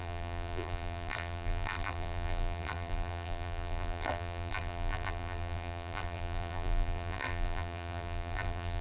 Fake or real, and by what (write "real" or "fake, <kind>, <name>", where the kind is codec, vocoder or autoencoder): fake, vocoder, BigVGAN v2